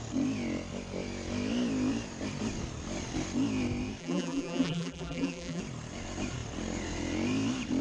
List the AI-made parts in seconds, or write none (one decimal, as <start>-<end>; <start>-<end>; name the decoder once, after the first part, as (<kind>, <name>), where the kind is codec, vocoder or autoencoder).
4.0-5.6 (vocoder, BigVGAN v2)

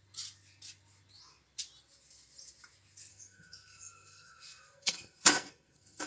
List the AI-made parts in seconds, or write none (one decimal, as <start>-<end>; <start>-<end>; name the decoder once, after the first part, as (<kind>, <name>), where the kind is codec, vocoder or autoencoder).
3.1-6.1 (codec, SNAC)

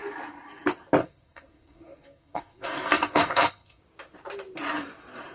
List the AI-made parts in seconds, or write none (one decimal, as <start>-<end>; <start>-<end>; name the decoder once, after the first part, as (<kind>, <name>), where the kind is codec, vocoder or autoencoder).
1.0-3.8 (codec, SNAC)